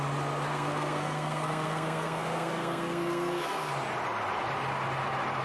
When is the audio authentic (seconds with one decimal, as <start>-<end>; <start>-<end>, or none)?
0.0-0.5; 3.7-5.4